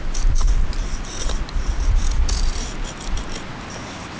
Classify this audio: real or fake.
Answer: real